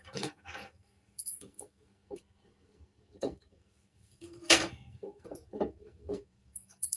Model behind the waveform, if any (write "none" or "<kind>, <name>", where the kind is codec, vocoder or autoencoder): codec, SNAC